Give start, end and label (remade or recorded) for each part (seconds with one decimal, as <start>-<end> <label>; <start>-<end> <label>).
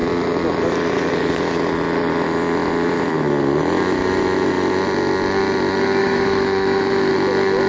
0.0-6.0 recorded; 6.0-7.1 remade; 7.1-7.7 recorded